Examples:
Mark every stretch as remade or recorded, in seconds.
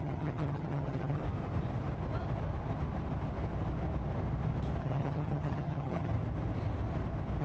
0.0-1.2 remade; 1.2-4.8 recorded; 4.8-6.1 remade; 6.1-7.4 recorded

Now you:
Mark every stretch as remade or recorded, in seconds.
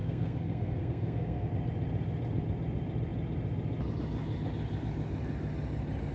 0.0-1.5 remade; 1.5-6.1 recorded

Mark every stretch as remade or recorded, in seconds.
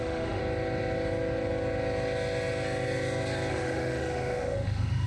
0.0-0.4 remade; 0.4-3.5 recorded; 3.5-5.1 remade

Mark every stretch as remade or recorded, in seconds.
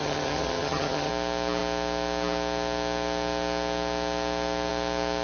0.0-1.1 remade; 1.1-5.2 recorded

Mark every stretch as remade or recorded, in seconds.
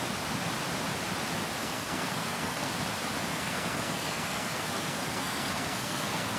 0.0-1.6 recorded; 1.6-2.7 remade; 2.7-3.3 recorded; 3.3-6.4 remade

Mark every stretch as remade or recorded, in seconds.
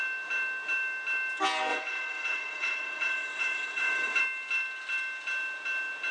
0.0-1.7 recorded; 1.7-4.2 remade; 4.2-6.1 recorded